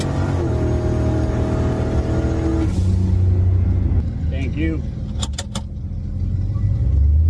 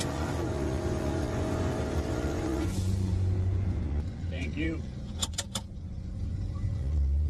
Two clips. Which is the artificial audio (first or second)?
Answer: second